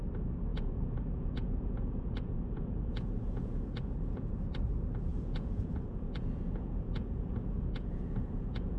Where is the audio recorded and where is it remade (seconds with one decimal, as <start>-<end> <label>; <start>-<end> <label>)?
0.0-0.5 recorded; 0.5-4.3 remade; 4.3-5.1 recorded; 5.1-8.8 remade